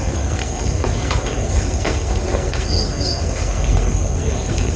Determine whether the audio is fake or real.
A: fake